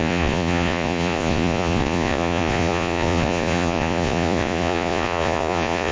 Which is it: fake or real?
fake